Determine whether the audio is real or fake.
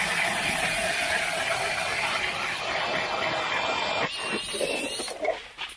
real